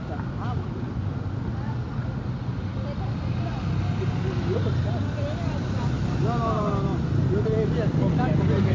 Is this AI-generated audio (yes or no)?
no